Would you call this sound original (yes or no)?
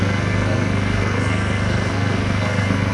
no